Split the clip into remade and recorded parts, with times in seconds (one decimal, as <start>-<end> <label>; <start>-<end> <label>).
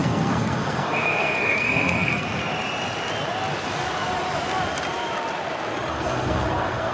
0.0-2.4 remade; 2.4-5.9 recorded; 5.9-6.9 remade